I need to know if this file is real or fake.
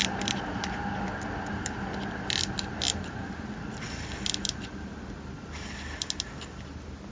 real